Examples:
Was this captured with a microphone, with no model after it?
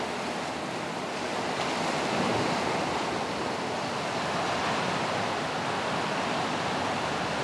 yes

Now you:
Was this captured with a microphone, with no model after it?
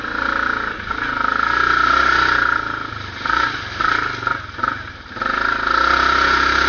yes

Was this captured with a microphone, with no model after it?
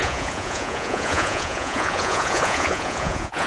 no